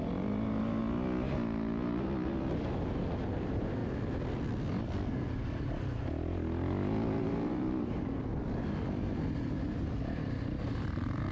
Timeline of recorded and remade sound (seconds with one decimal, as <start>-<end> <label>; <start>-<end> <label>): 0.0-0.8 remade; 0.8-3.4 recorded; 3.4-3.8 remade; 3.8-7.2 recorded; 7.2-8.3 remade; 8.3-10.8 recorded; 10.8-11.3 remade